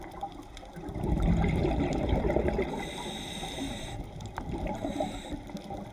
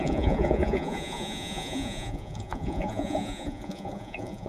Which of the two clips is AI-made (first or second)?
second